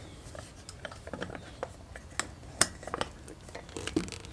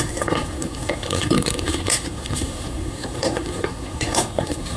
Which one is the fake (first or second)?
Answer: second